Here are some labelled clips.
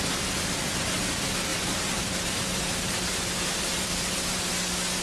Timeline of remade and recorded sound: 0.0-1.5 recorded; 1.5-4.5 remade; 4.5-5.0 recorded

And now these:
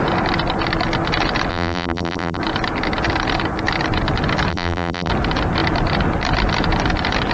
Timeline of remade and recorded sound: 0.0-1.5 recorded; 1.5-2.4 remade; 2.4-4.5 recorded; 4.5-5.1 remade; 5.1-7.3 recorded